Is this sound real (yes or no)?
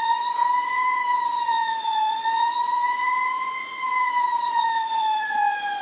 no